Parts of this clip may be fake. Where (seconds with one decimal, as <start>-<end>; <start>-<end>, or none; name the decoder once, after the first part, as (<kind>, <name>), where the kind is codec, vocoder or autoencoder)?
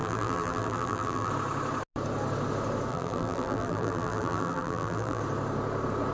0.0-1.3 (vocoder, BigVGAN v2); 2.9-5.2